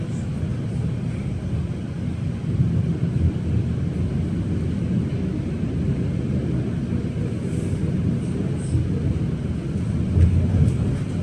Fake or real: real